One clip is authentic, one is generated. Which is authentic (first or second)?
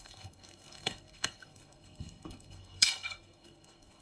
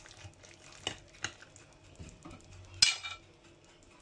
second